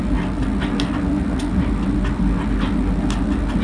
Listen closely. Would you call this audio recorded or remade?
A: recorded